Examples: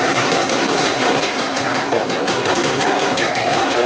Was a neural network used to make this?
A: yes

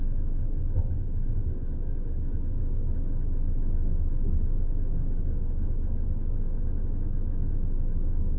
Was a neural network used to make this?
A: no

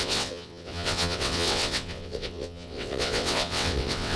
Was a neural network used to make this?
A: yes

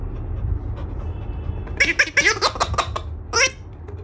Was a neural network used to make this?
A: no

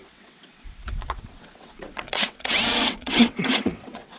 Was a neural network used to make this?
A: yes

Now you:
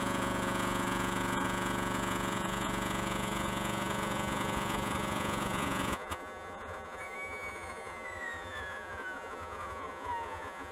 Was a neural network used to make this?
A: yes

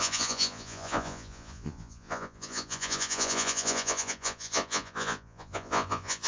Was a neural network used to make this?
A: yes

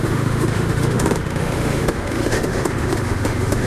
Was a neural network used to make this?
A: yes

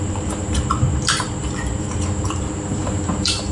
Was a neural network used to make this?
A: yes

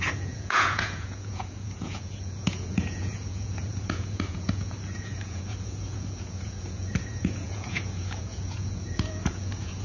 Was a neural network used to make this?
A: yes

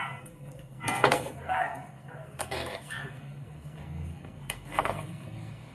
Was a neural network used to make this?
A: yes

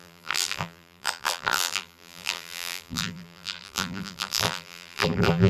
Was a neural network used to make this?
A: yes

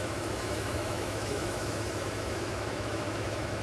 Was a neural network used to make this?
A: yes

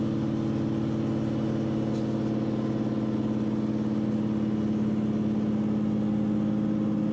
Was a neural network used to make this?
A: no